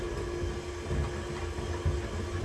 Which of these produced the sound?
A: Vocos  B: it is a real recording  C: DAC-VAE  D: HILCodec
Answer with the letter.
B